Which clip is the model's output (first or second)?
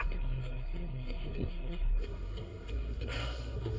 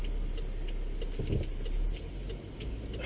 first